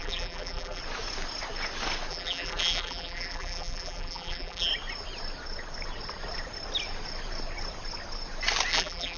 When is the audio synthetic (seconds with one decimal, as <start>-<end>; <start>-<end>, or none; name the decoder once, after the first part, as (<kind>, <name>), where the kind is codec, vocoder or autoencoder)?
0.0-0.8 (vocoder, BigVGAN v2); 2.1-4.7; 8.7-9.2